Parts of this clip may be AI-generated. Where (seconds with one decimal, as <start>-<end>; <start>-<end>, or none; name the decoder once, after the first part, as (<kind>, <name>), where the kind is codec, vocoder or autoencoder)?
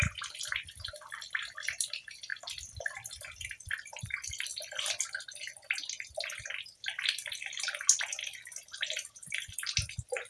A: none